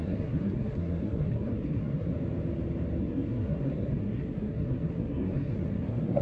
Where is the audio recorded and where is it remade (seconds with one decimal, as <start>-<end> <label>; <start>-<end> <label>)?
0.0-2.1 remade; 2.1-3.0 recorded; 3.0-6.2 remade